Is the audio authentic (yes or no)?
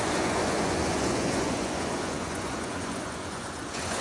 no